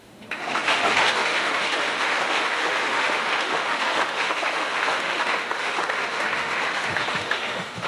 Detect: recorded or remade remade